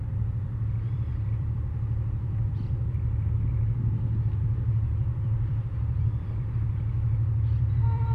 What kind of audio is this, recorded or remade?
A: remade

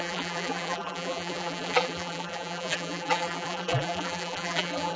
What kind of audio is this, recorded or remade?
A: remade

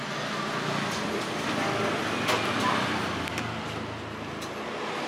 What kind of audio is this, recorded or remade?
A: recorded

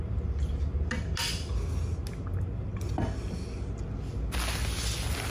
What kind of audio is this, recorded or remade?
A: recorded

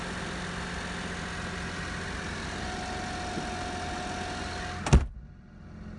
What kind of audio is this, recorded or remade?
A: recorded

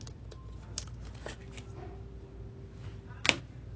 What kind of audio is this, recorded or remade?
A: recorded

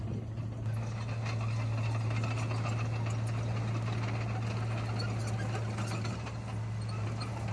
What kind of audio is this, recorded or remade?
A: recorded